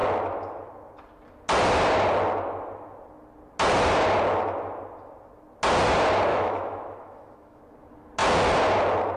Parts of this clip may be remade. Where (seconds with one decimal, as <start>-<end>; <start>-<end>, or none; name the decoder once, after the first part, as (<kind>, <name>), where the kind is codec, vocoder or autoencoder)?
6.3-7.6 (autoencoder, DAC-VAE)